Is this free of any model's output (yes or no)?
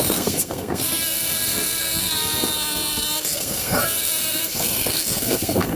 no